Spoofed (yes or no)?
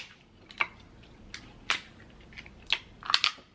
no